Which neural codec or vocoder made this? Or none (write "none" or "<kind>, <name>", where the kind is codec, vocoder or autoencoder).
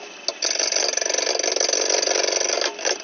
none